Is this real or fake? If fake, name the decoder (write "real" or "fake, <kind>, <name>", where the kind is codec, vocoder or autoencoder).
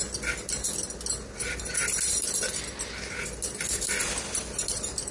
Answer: real